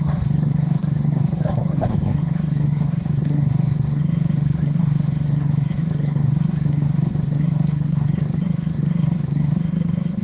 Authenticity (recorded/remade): remade